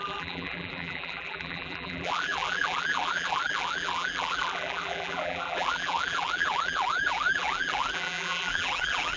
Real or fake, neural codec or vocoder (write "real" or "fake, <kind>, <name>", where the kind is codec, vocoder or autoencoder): fake, vocoder, BigVGAN v2